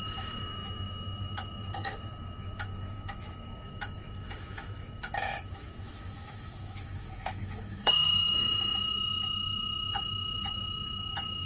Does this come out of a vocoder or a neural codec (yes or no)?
yes